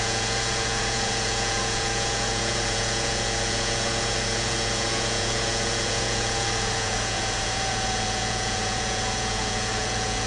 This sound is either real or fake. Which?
fake